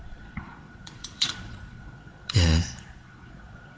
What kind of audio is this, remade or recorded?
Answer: remade